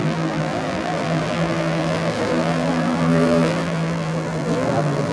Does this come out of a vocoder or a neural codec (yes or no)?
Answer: yes